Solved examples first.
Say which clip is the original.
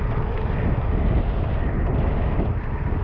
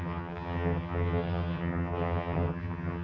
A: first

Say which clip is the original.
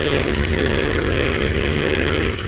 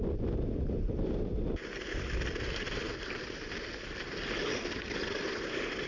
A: second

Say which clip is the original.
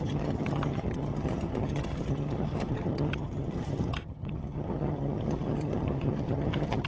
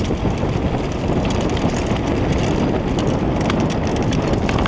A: second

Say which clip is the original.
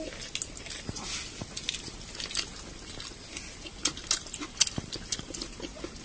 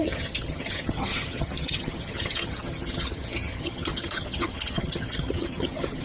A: first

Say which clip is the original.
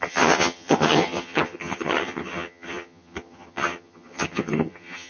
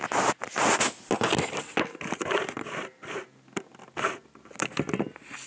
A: second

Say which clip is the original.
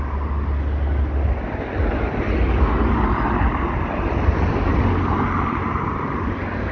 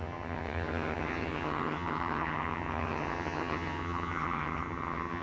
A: first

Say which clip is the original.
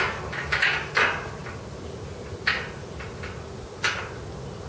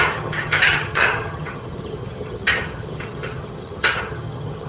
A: first